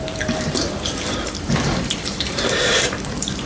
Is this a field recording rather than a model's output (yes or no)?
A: no